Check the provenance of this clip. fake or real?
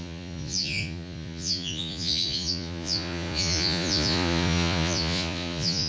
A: fake